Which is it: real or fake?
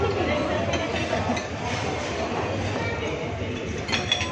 real